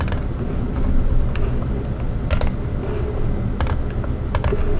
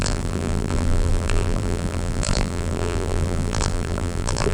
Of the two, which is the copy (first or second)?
second